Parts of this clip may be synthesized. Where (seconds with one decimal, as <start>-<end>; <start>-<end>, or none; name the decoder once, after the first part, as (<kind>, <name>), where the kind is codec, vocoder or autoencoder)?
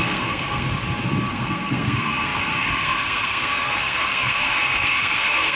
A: 0.0-0.7 (codec, SNAC); 1.3-5.5